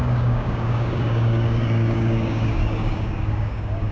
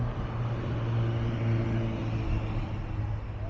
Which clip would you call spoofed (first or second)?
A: first